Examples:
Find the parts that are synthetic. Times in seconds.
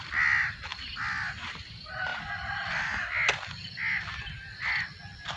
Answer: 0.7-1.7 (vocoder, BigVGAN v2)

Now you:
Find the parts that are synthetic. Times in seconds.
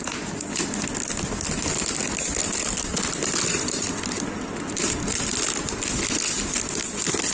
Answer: 2.0-4.9 (vocoder, BigVGAN v2)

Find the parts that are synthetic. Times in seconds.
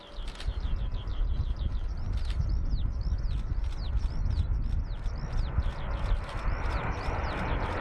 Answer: 1.1-2.5 (vocoder, BigVGAN v2)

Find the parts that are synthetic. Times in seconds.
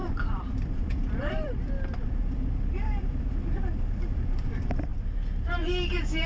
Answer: 0.0-4.9 (vocoder, BigVGAN v2)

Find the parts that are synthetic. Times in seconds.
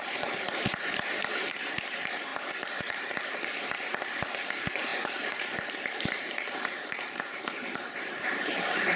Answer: 0.0-9.0 (vocoder, BigVGAN v2)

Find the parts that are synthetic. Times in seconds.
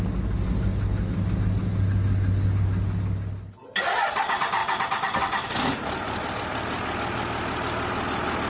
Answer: 4.6-5.2 (vocoder, BigVGAN v2)